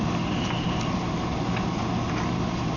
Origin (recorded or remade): recorded